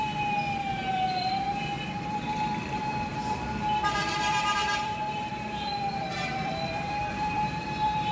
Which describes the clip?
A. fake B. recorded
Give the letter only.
A